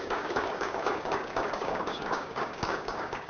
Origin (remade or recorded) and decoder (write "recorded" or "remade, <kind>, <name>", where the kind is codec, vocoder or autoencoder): remade, codec, DAC